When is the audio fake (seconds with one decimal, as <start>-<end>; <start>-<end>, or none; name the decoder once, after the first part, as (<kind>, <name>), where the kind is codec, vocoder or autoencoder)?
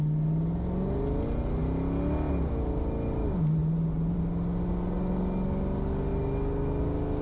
3.6-4.2 (vocoder, BigVGAN v2)